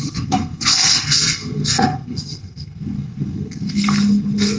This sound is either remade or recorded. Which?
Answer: remade